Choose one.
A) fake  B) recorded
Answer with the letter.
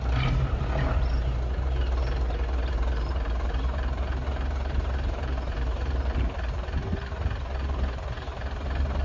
A